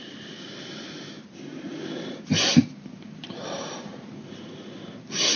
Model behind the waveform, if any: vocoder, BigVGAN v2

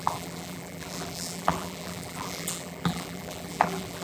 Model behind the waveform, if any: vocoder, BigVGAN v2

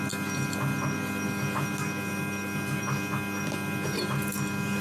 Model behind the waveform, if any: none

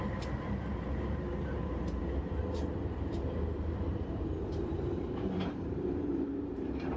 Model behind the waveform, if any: vocoder, BigVGAN v2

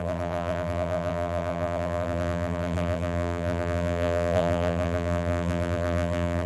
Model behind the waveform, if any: vocoder, BigVGAN v2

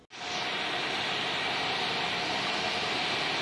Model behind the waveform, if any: none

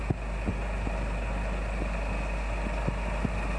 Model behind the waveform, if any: none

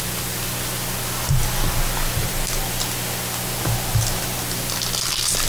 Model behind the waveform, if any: none